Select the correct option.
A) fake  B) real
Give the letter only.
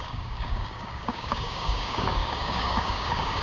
A